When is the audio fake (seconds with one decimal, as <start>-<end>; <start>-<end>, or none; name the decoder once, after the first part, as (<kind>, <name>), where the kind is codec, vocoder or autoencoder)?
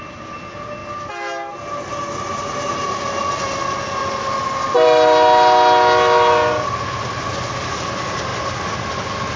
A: none